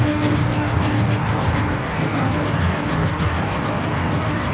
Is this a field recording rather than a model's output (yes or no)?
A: no